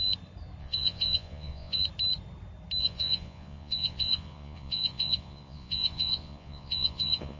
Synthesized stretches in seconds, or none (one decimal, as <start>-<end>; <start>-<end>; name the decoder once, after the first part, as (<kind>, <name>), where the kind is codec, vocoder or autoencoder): 0.6-1.8 (vocoder, Vocos); 2.8-7.4